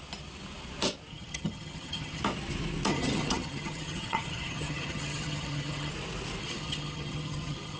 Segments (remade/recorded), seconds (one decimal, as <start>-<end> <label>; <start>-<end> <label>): 0.0-1.1 recorded; 1.1-2.2 remade; 2.2-2.9 recorded; 2.9-5.9 remade; 5.9-6.4 recorded; 6.4-7.8 remade